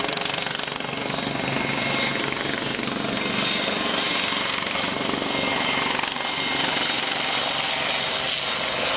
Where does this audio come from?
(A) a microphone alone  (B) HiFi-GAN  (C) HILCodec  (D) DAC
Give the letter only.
A